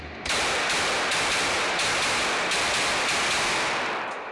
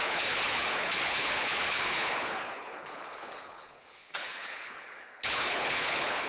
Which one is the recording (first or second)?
first